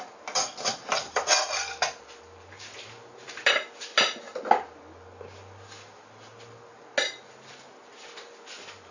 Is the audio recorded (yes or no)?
yes